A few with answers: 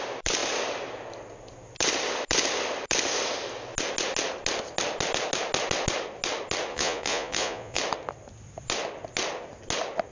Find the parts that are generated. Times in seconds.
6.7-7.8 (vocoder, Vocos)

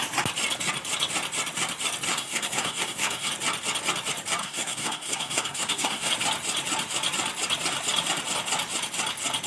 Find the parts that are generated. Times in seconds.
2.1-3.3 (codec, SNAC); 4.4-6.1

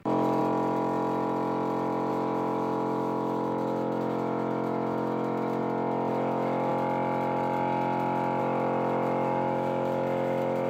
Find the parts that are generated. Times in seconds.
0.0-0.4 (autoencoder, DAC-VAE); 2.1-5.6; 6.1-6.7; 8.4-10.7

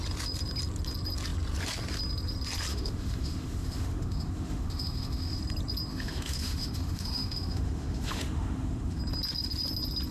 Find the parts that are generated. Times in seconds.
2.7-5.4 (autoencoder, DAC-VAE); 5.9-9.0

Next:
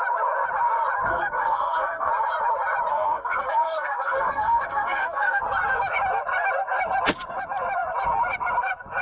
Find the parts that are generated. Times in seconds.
1.1-2.1 (codec, SNAC); 2.9-5.4